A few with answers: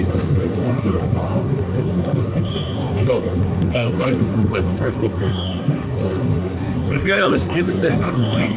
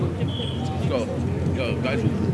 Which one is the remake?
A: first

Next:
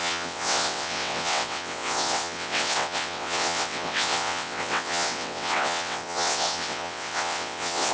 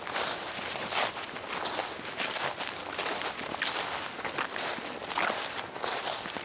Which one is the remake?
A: first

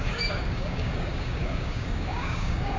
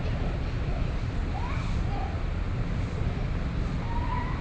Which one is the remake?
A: first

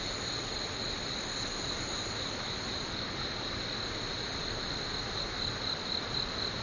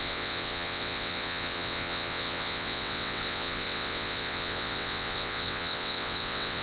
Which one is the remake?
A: second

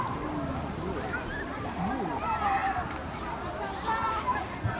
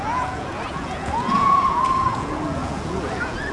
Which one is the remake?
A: second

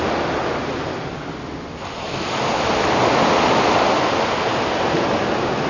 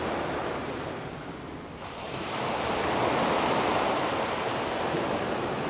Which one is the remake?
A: second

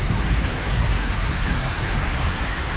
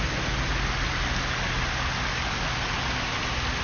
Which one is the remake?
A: first